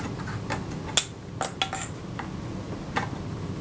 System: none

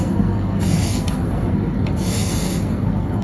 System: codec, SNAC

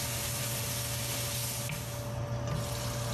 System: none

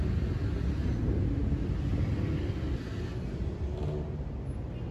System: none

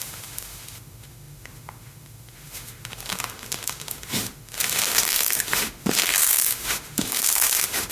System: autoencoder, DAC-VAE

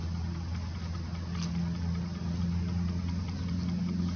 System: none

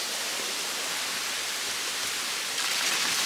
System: none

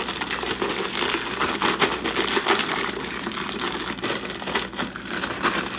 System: none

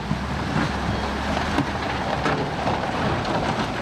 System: none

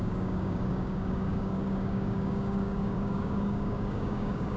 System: codec, DAC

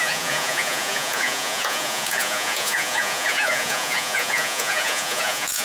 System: vocoder, Vocos